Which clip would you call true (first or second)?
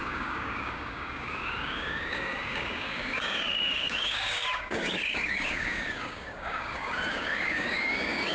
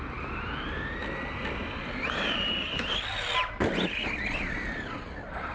second